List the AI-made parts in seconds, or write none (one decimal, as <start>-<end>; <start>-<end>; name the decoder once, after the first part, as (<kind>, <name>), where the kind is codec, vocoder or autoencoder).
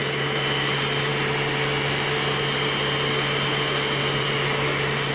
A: none